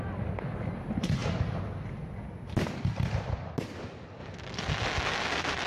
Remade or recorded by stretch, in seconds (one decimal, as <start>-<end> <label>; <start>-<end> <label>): 0.0-5.7 recorded